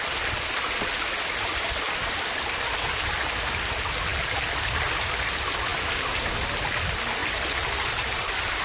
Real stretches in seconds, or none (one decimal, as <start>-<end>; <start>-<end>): 0.0-4.1; 4.8-7.2